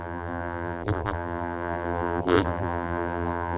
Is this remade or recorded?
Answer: remade